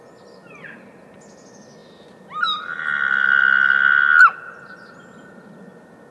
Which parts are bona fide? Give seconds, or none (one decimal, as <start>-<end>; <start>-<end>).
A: 0.0-6.1